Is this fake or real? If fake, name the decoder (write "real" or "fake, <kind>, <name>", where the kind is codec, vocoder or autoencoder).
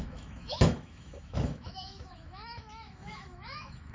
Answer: fake, autoencoder, DAC-VAE